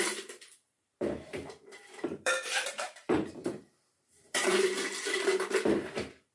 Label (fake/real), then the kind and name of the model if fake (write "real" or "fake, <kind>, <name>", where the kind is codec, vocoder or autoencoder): fake, vocoder, BigVGAN v2